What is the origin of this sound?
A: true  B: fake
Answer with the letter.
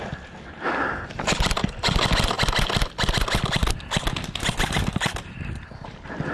A